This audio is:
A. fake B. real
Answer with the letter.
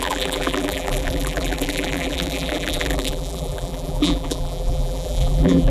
A